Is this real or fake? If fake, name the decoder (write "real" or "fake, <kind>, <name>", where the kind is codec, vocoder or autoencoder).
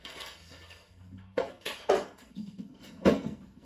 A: fake, codec, SNAC